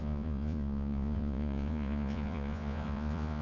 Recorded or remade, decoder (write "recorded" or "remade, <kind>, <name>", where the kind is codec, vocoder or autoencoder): remade, vocoder, Vocos